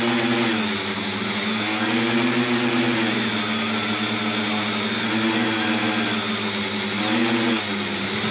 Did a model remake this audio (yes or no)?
no